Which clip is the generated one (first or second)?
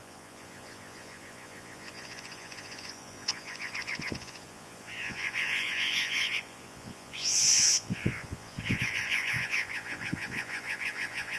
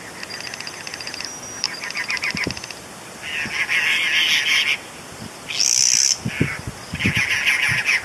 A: first